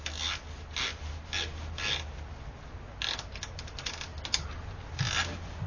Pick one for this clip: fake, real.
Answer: real